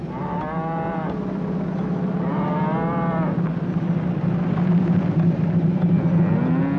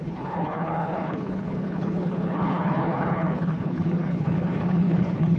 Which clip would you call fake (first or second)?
second